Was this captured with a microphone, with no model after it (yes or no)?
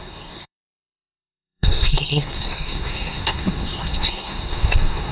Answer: no